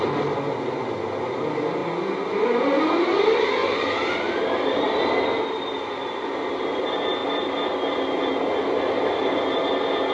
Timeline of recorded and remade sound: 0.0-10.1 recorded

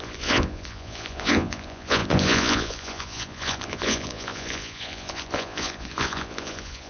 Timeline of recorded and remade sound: 0.0-6.9 remade

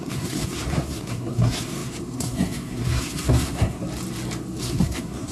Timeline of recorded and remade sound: 0.0-3.8 remade; 3.8-4.6 recorded; 4.6-5.3 remade

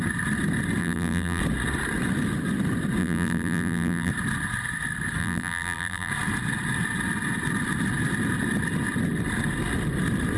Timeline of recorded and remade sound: 0.0-0.8 recorded; 0.8-1.4 remade; 1.4-3.0 recorded; 3.0-4.1 remade; 4.1-5.2 recorded; 5.2-6.1 remade; 6.1-10.4 recorded

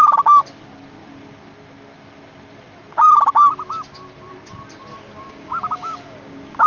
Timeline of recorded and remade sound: 0.0-4.9 recorded; 4.9-6.7 remade

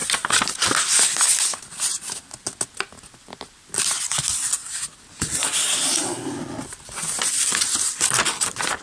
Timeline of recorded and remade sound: 0.0-8.8 recorded

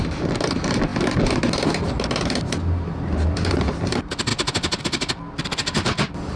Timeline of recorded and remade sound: 0.0-6.4 recorded